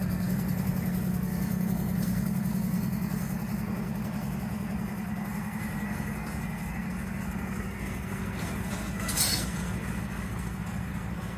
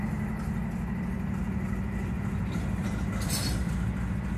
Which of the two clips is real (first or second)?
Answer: second